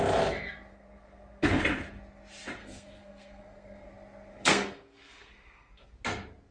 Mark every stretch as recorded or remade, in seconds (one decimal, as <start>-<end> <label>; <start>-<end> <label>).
0.0-0.7 recorded; 0.7-1.6 remade; 1.6-2.6 recorded; 2.6-3.9 remade; 3.9-4.3 recorded; 4.3-5.9 remade; 5.9-6.5 recorded